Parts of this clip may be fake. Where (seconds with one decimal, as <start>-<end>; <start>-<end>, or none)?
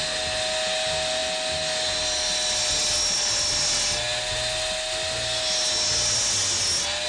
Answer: none